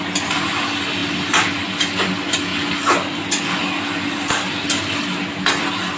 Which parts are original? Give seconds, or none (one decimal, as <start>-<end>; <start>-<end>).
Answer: 0.0-6.0